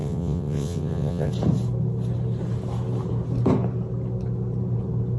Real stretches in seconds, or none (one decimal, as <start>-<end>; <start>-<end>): 1.3-5.2